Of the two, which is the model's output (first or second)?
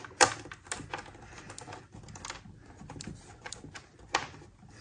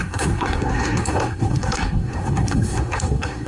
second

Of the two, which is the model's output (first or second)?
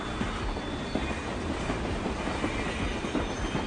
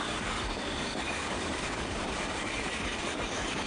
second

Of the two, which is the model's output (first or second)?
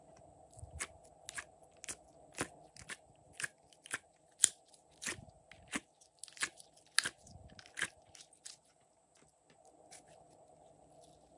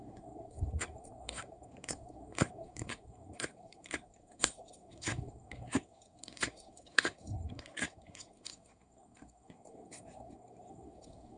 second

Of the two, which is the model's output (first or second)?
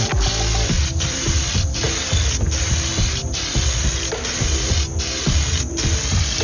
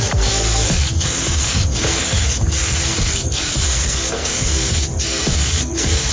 second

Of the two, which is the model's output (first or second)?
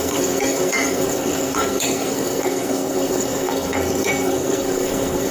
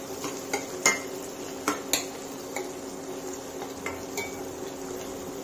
first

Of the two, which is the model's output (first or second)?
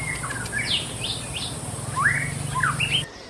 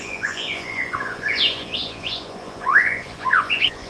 second